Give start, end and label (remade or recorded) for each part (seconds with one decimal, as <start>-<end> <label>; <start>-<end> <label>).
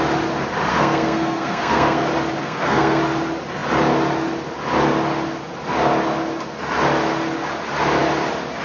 0.0-0.7 recorded; 0.7-2.0 remade; 2.0-2.4 recorded; 2.4-3.0 remade; 3.0-8.6 recorded